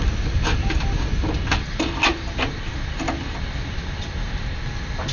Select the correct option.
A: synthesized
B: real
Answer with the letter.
B